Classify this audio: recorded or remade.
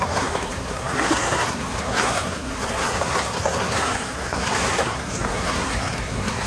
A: remade